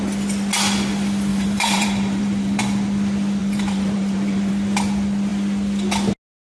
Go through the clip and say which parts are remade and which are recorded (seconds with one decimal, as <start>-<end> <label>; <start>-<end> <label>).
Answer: 0.0-1.3 recorded; 1.3-2.6 remade; 2.6-3.4 recorded; 3.4-4.5 remade; 4.5-6.4 recorded